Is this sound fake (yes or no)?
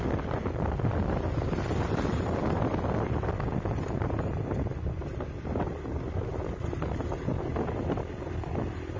no